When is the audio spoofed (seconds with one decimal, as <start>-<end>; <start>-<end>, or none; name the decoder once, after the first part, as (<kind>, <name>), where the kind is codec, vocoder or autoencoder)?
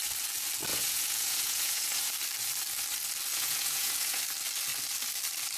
0.7-2.1 (vocoder, Vocos); 3.3-4.2